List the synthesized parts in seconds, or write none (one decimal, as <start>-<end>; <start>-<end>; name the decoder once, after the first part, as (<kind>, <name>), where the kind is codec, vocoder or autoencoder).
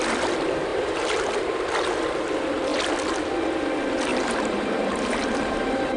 0.7-1.2 (vocoder, BigVGAN v2); 4.1-6.0